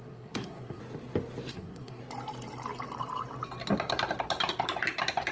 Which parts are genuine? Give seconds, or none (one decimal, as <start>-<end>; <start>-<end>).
0.8-1.5; 2.0-5.3